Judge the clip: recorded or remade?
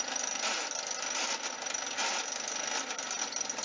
recorded